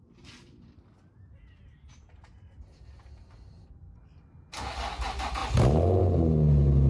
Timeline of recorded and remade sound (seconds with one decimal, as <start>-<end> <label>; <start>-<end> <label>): 0.0-6.9 recorded